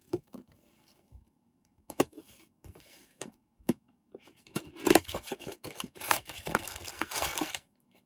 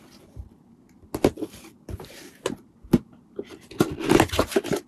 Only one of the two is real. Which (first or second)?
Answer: second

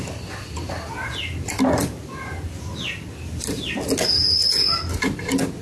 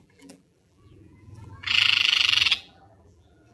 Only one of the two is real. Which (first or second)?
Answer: first